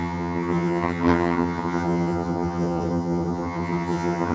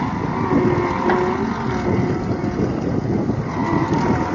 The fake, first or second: first